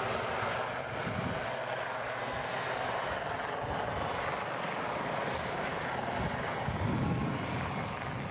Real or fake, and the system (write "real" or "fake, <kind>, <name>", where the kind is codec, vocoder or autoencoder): real